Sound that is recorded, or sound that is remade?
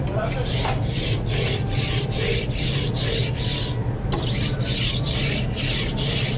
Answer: recorded